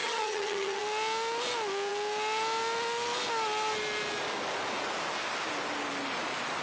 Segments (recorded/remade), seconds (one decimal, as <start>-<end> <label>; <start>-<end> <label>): 0.0-0.8 remade; 0.8-6.6 recorded